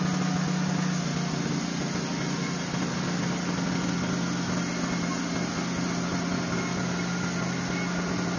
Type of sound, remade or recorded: recorded